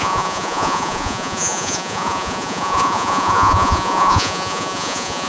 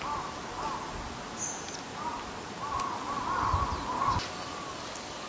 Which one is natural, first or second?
second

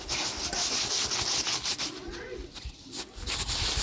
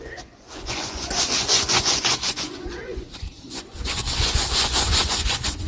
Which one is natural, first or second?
first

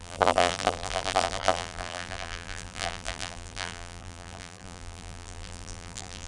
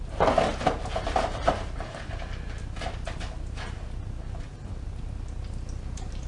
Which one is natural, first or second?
second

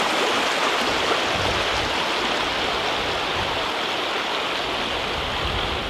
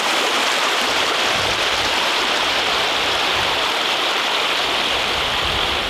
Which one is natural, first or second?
first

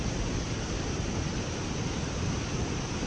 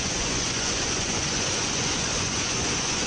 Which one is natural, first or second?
first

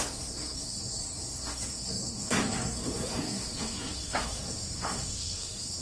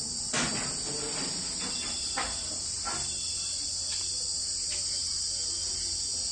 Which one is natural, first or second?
second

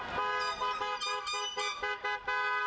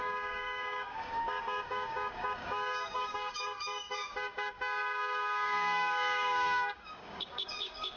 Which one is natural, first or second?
first